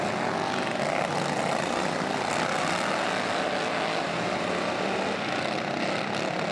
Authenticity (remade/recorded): recorded